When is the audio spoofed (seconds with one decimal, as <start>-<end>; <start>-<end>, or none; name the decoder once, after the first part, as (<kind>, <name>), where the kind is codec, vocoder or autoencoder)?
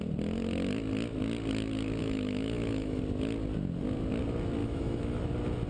2.0-3.0 (autoencoder, DAC-VAE); 4.6-5.2